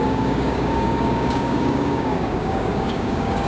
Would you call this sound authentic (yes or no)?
no